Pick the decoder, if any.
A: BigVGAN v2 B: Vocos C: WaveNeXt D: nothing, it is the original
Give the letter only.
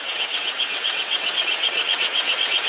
C